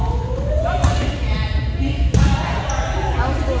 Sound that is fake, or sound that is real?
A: real